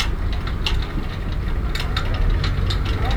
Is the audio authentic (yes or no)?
yes